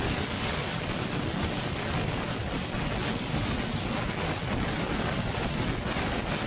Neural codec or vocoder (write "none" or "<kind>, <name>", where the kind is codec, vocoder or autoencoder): none